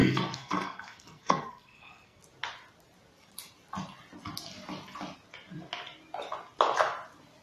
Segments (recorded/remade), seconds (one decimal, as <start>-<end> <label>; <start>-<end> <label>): 0.0-2.2 remade; 2.2-7.4 recorded